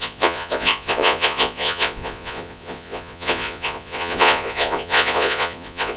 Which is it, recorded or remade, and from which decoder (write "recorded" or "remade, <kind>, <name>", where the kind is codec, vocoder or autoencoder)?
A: remade, vocoder, Vocos